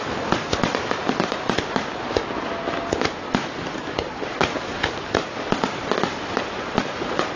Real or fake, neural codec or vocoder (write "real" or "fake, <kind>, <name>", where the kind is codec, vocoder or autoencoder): real